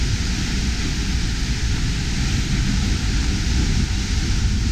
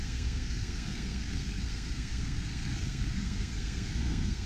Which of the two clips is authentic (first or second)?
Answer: first